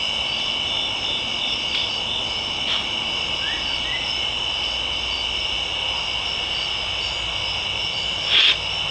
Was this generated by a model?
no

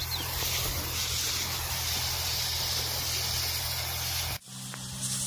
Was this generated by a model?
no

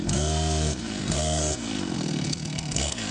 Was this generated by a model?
yes